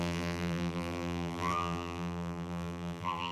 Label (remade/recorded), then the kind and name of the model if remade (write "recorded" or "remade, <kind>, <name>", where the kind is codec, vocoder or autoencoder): remade, vocoder, BigVGAN v2